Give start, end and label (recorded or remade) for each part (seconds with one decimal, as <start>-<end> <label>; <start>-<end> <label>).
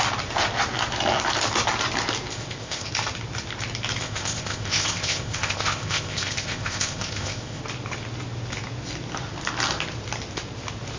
0.0-2.3 recorded; 2.3-2.9 remade; 2.9-4.0 recorded; 4.0-7.6 remade; 7.6-11.0 recorded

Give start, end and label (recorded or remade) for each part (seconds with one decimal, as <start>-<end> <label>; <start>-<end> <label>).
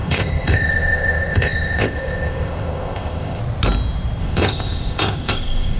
0.0-3.4 remade; 3.4-4.2 recorded; 4.2-5.8 remade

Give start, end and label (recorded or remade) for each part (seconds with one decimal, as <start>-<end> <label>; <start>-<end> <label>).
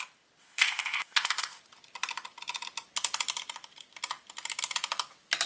0.0-0.4 recorded; 0.4-1.6 remade; 1.6-5.5 recorded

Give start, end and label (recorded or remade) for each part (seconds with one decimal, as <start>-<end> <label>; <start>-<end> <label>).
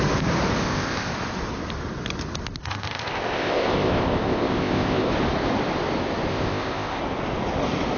0.0-0.6 recorded; 0.6-1.1 remade; 1.1-2.6 recorded; 2.6-5.1 remade; 5.1-6.3 recorded; 6.3-7.0 remade; 7.0-8.0 recorded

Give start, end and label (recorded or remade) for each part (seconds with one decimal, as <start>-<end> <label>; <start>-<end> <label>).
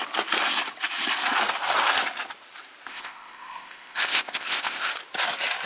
0.0-2.9 recorded; 2.9-4.9 remade; 4.9-5.7 recorded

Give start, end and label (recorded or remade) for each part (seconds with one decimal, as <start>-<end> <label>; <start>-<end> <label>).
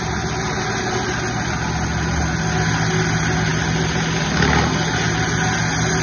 0.0-6.0 recorded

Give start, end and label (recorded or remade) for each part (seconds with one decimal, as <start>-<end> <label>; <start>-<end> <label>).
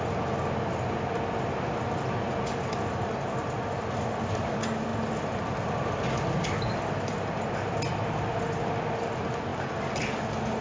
0.0-10.6 recorded